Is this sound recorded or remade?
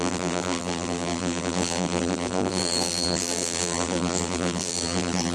remade